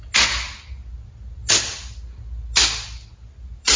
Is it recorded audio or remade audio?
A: recorded